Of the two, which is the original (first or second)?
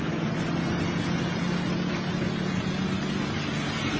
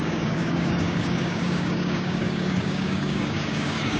first